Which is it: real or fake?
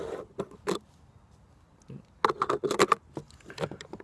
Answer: real